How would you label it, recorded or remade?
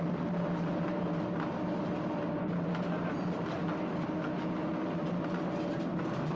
recorded